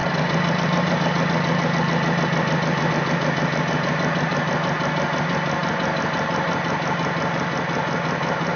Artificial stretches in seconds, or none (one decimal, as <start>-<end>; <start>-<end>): none